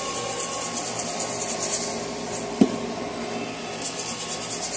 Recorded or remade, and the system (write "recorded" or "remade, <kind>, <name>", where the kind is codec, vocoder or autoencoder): recorded